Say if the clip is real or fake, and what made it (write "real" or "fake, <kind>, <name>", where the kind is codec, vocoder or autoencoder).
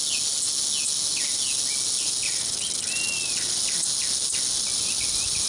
real